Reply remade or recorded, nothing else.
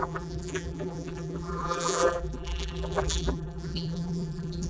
remade